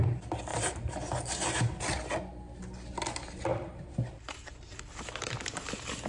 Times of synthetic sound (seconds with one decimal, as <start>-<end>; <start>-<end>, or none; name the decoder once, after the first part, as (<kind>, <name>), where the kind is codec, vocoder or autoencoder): 0.5-1.6 (vocoder, BigVGAN v2); 3.5-4.8